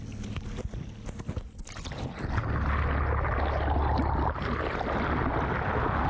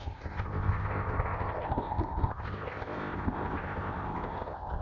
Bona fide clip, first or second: first